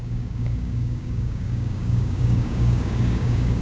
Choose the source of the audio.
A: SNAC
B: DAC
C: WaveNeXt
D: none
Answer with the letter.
B